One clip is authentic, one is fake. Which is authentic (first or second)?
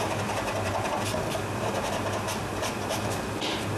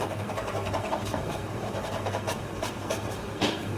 first